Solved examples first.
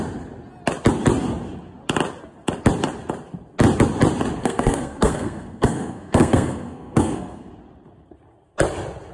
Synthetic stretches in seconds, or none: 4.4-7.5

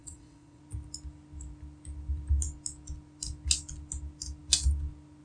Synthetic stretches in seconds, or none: 0.0-0.6

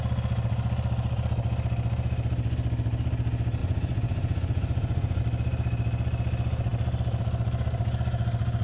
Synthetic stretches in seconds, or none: 3.6-5.2